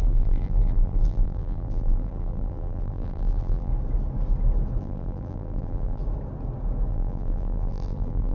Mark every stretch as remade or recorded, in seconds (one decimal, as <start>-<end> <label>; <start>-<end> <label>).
0.0-3.7 remade; 3.7-4.8 recorded; 4.8-6.0 remade; 6.0-6.9 recorded; 6.9-8.3 remade